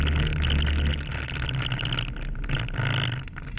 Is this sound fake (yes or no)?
no